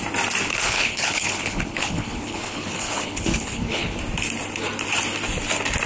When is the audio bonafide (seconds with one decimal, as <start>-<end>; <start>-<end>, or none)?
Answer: 0.0-0.5; 4.0-5.9